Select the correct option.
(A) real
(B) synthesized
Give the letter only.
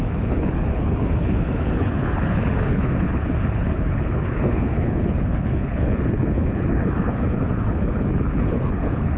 B